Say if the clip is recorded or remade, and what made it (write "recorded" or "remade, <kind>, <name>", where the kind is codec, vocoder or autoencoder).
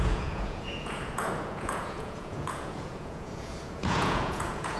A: remade, vocoder, Vocos